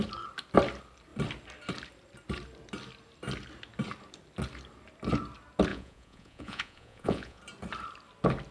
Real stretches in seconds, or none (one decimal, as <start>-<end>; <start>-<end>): 0.0-5.7; 7.4-8.5